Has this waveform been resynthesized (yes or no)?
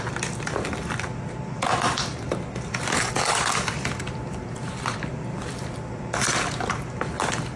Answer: yes